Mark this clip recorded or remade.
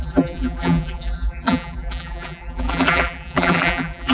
remade